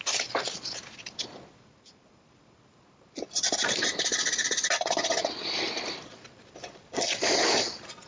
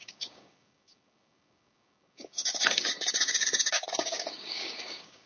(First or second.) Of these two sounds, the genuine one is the first